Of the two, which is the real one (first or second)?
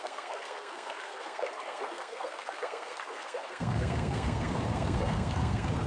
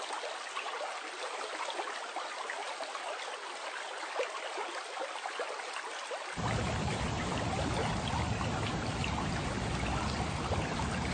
second